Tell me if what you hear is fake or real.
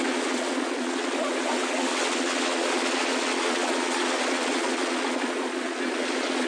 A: fake